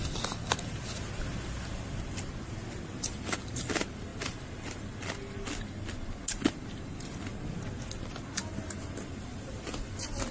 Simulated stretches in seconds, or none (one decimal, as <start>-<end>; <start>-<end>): none